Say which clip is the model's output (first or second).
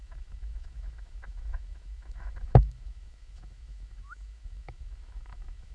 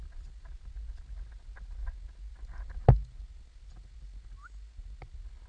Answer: first